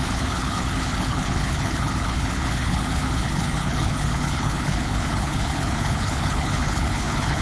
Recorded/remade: remade